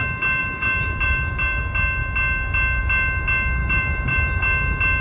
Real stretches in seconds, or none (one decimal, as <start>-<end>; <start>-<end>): 0.0-0.4; 1.6-3.6; 4.4-5.0